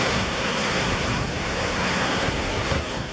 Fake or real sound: fake